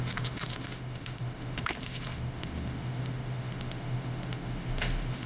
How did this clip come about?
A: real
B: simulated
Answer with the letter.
B